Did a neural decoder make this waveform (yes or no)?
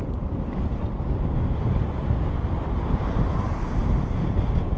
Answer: no